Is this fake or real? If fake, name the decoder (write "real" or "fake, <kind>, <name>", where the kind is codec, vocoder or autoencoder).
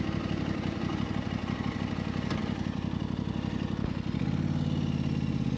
real